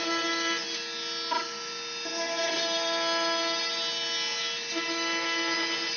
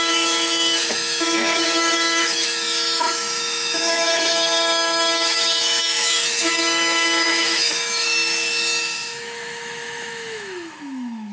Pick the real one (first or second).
first